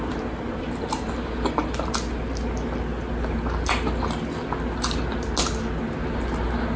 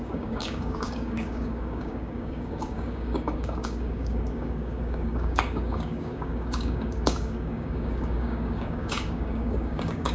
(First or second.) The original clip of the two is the first